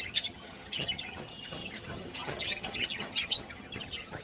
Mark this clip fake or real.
fake